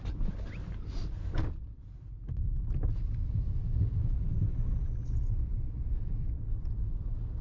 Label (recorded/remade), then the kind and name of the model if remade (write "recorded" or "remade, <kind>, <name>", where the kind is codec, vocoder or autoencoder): recorded